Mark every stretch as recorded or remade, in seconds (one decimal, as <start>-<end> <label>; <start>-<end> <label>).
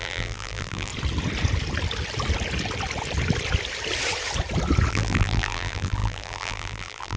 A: 0.0-0.9 remade; 0.9-4.9 recorded; 4.9-7.2 remade